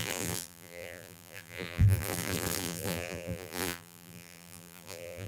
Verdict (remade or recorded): remade